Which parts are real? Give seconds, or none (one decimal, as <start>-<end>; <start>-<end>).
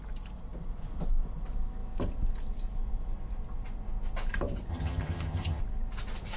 0.0-4.7; 5.6-6.4